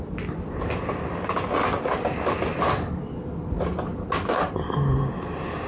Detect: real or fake real